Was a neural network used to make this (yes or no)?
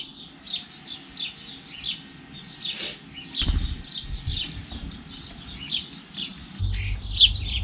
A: no